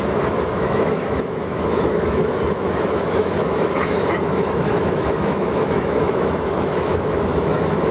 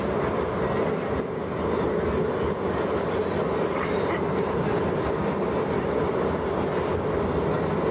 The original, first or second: second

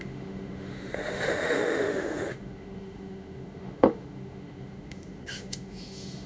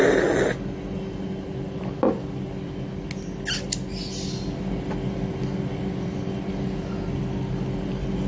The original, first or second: second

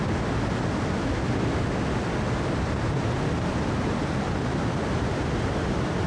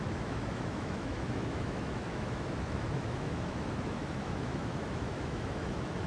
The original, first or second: first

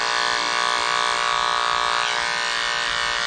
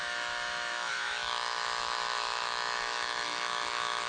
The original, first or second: first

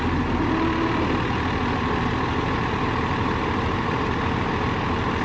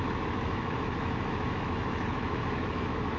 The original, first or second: first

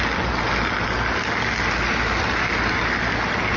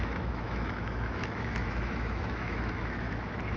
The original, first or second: first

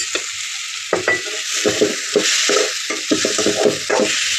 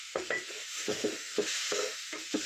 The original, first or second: first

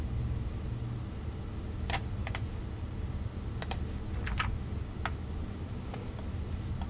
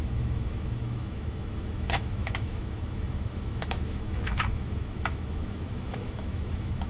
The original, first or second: first